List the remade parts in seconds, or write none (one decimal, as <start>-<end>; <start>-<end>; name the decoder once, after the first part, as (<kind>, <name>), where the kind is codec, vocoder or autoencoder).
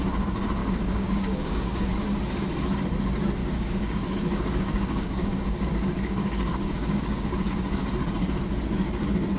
0.6-2.0 (codec, DAC); 3.4-7.5